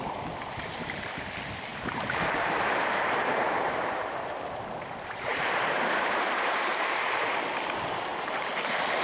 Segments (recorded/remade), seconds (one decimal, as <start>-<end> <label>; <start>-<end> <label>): 0.0-1.7 recorded; 1.7-6.6 remade; 6.6-8.1 recorded; 8.1-9.0 remade